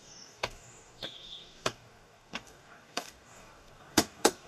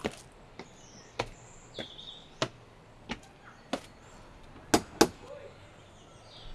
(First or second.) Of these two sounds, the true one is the second